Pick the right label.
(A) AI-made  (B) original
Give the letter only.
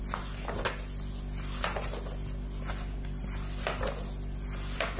B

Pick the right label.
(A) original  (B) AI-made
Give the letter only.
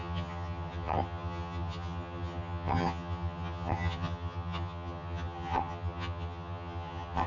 B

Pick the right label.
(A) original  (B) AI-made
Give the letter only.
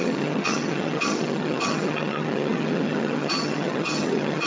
B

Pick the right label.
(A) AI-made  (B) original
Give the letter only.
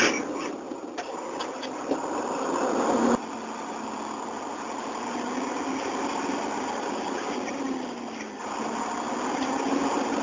B